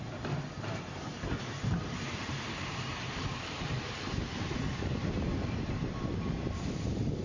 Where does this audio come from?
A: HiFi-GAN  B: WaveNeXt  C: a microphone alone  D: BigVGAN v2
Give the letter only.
D